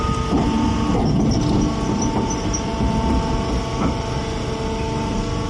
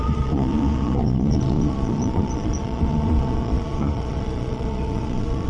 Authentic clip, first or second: first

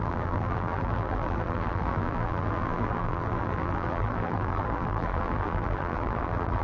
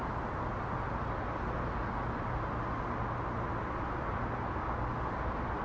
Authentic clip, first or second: second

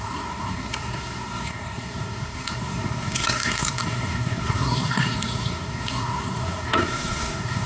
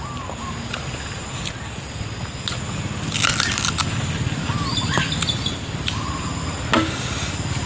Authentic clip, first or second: second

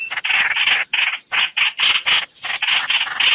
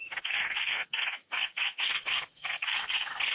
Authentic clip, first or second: first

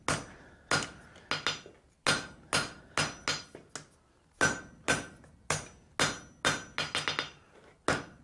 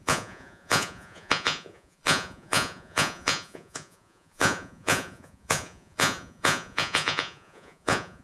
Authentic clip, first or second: first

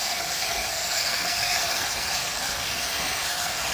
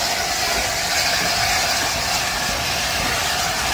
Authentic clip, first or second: second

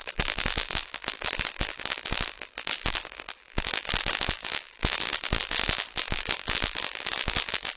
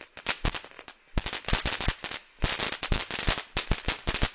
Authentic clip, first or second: second